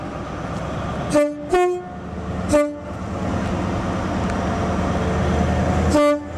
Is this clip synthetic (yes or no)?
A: no